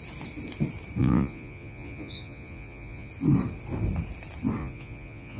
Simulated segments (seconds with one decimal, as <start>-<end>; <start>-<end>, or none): 1.0-3.1; 4.6-5.4